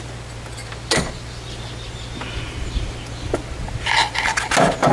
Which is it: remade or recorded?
recorded